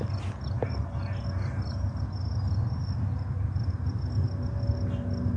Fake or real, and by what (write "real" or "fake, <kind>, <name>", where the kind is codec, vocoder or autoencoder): real